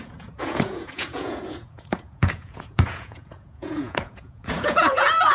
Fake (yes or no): yes